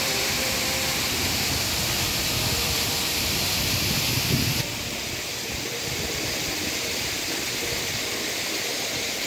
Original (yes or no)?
no